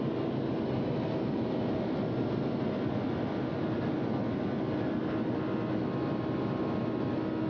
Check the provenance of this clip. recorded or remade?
recorded